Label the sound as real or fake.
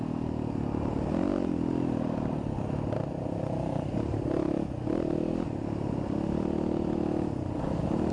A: real